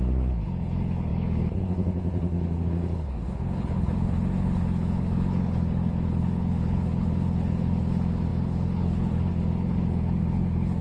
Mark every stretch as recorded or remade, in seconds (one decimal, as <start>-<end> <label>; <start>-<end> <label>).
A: 0.0-10.8 remade